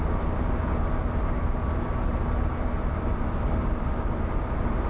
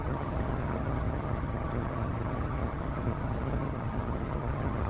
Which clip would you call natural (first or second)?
first